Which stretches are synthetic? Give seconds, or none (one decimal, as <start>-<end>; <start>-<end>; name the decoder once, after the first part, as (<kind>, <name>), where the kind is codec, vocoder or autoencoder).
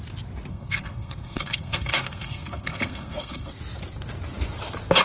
0.5-3.5 (codec, SNAC)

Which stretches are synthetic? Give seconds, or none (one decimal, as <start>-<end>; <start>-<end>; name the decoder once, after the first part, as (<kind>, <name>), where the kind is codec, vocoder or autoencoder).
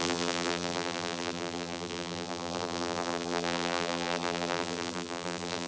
0.0-5.7 (vocoder, BigVGAN v2)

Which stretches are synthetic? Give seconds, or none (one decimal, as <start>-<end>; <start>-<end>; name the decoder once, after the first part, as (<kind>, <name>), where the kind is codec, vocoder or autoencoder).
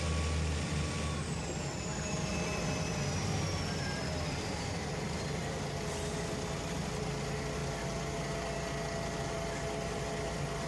none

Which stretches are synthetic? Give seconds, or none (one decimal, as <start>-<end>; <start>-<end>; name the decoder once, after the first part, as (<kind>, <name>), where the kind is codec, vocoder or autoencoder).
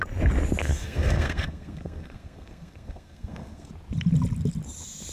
0.6-3.7 (codec, SNAC)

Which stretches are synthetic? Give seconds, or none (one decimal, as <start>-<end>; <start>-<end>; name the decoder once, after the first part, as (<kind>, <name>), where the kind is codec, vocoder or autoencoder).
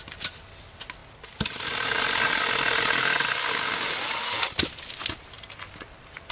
none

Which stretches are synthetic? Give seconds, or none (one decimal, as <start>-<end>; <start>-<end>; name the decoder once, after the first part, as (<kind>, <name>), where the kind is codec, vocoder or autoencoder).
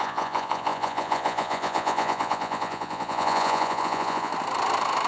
0.0-4.3 (vocoder, Vocos)